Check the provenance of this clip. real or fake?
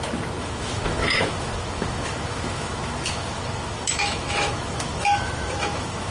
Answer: fake